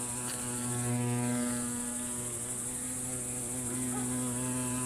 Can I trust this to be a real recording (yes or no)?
yes